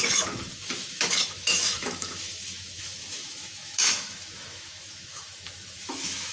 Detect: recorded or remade remade